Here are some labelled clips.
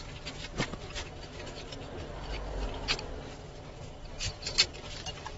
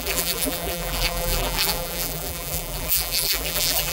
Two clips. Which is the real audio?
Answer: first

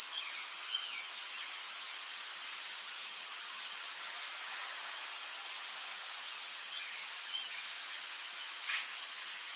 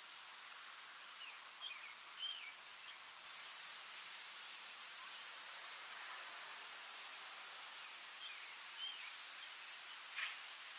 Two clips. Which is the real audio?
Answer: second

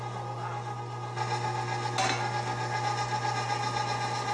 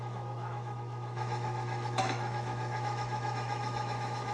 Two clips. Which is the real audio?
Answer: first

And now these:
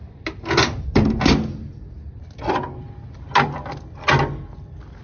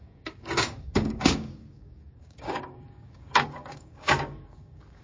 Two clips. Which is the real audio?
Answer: first